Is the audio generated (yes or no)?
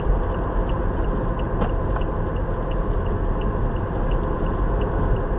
no